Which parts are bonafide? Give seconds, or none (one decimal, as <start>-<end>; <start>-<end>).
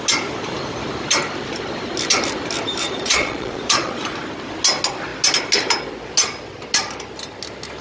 0.0-2.8; 4.0-7.8